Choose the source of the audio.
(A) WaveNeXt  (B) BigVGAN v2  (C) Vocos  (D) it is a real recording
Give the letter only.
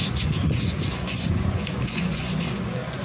C